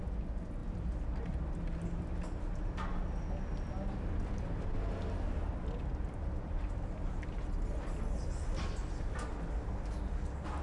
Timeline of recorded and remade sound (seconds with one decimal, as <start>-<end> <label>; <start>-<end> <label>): 0.0-10.6 recorded

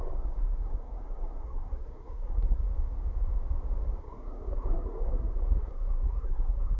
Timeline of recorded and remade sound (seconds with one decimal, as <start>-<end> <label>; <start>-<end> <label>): 0.0-2.6 remade; 2.6-4.0 recorded; 4.0-6.8 remade

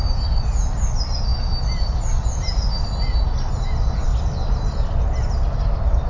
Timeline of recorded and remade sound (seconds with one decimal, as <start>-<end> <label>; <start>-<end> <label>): 0.0-6.1 recorded

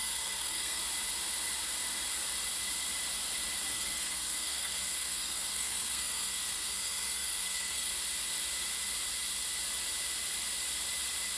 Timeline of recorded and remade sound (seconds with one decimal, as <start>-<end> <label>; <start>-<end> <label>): 0.0-0.8 remade; 0.8-3.7 recorded; 3.7-7.9 remade; 7.9-11.4 recorded

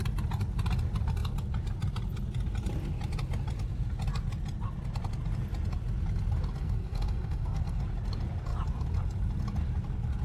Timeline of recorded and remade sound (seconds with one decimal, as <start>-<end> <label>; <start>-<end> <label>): 0.0-6.6 recorded; 6.6-7.8 remade; 7.8-10.2 recorded

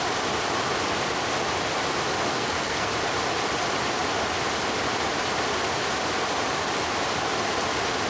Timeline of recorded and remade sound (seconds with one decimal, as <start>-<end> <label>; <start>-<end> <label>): 0.0-2.3 recorded; 2.3-2.9 remade; 2.9-8.1 recorded

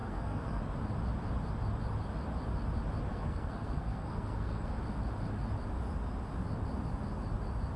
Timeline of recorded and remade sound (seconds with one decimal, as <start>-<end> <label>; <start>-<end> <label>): 0.0-0.6 remade; 0.6-3.1 recorded; 3.1-4.8 remade; 4.8-7.8 recorded